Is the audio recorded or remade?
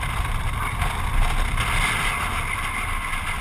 recorded